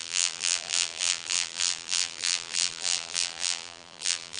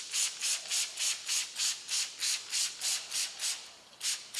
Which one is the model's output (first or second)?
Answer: first